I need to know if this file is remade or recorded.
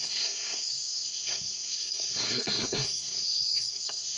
remade